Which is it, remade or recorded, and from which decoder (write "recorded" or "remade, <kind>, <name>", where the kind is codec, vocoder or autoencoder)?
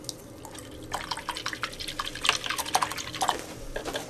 recorded